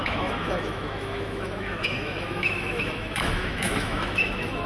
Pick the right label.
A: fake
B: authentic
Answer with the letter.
A